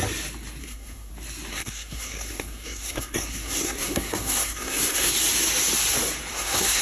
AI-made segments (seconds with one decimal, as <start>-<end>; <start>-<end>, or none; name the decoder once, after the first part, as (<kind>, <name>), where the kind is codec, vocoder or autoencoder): 0.6-1.1 (codec, SNAC); 1.5-5.1; 6.3-6.8